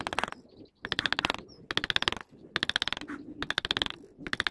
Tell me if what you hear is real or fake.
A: real